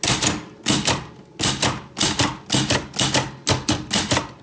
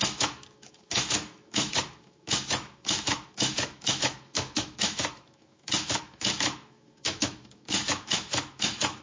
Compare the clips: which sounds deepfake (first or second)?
second